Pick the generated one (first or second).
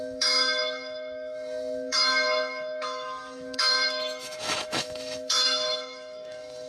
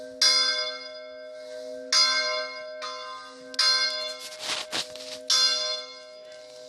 first